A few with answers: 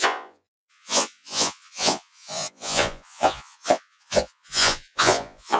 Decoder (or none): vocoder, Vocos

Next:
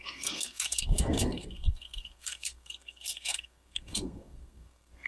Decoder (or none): codec, SNAC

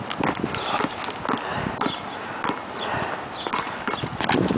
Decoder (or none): none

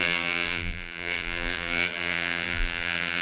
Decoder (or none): vocoder, BigVGAN v2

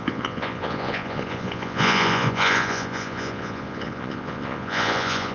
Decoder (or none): vocoder, Vocos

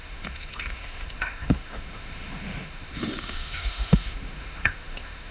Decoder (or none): autoencoder, DAC-VAE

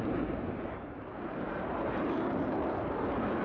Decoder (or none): none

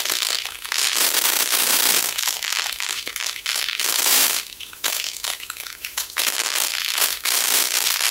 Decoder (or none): autoencoder, DAC-VAE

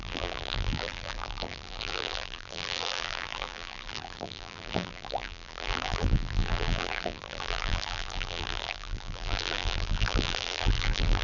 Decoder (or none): vocoder, BigVGAN v2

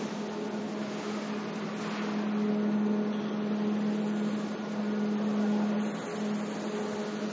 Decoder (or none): none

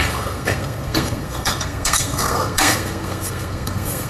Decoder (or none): codec, SNAC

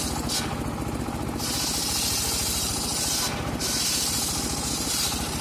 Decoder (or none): none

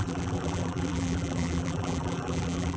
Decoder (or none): vocoder, BigVGAN v2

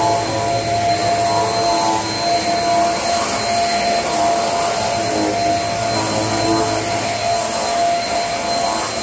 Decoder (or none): none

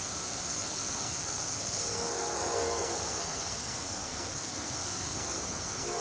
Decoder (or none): codec, SNAC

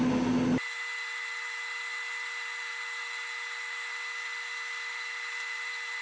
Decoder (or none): none